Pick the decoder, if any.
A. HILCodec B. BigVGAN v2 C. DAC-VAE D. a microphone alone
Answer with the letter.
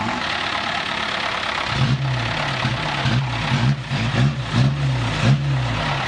D